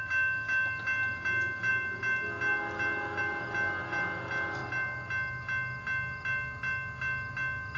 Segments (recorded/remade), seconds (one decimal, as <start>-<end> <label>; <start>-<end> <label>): 0.0-7.8 recorded